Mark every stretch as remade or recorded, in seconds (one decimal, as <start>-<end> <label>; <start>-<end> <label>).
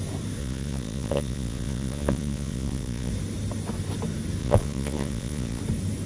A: 0.0-0.4 recorded; 0.4-3.1 remade; 3.1-4.4 recorded; 4.4-5.6 remade; 5.6-6.1 recorded